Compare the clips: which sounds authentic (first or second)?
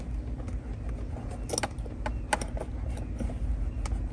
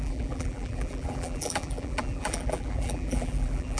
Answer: first